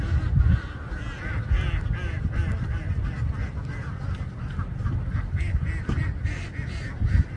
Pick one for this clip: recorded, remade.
recorded